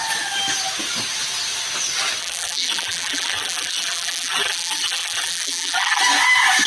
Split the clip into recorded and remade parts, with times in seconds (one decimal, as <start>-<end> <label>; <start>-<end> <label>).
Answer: 0.0-2.2 recorded; 2.2-6.0 remade; 6.0-6.7 recorded